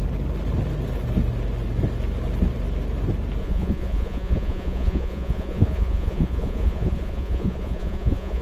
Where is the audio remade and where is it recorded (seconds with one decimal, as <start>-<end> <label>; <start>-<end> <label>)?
0.0-3.4 recorded; 3.4-8.4 remade